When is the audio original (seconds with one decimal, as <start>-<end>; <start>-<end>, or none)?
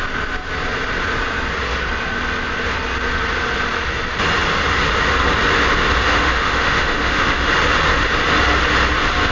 0.0-6.0; 7.5-9.3